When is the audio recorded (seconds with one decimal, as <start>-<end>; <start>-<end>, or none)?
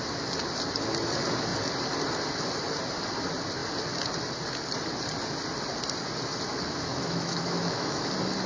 0.0-7.0; 8.1-8.5